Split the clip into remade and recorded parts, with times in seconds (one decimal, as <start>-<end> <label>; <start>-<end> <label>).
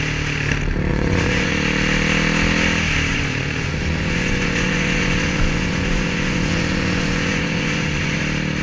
0.0-0.9 recorded; 0.9-1.5 remade; 1.5-3.1 recorded; 3.1-8.2 remade; 8.2-8.6 recorded